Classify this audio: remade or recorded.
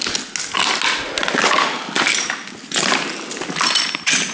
recorded